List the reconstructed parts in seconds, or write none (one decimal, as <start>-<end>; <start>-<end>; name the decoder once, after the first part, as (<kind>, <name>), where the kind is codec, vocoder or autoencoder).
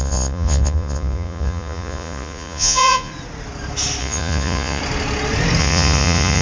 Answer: 0.0-3.1 (vocoder, Vocos); 4.0-4.8; 5.6-6.4